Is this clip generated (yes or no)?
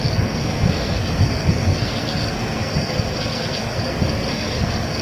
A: yes